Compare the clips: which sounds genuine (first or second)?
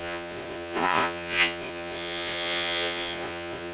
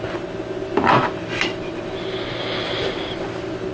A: second